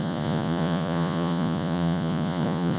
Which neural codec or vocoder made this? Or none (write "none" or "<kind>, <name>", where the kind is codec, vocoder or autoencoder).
vocoder, Vocos